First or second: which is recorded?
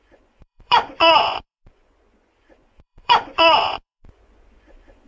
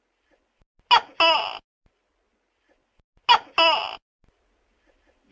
second